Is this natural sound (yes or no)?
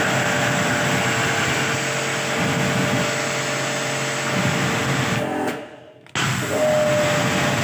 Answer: yes